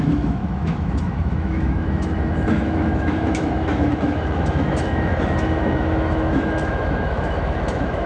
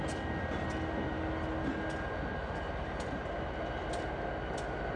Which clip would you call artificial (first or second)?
first